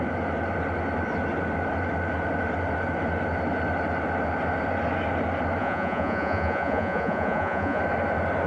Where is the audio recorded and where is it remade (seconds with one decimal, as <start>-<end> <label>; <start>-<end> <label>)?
0.0-5.6 recorded; 5.6-7.8 remade; 7.8-8.5 recorded